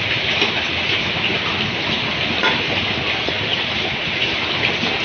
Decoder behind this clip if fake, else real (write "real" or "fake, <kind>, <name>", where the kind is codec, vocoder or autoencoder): real